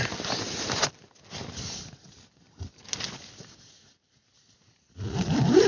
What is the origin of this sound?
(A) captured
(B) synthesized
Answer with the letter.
A